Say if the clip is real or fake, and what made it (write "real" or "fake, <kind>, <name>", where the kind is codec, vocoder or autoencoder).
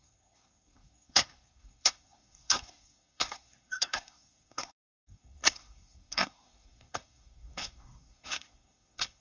fake, codec, SNAC